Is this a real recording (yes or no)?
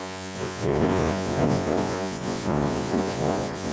no